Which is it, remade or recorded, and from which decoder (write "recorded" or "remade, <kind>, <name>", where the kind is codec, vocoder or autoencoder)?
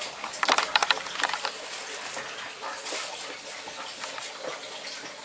recorded